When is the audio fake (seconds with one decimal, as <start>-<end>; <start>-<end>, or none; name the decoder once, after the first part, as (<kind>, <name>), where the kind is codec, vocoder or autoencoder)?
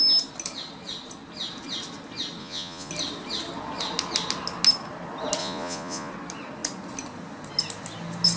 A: 2.4-2.9 (vocoder, Vocos); 5.4-6.1